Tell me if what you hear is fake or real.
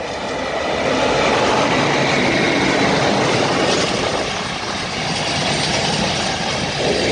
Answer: real